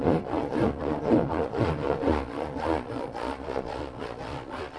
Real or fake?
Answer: fake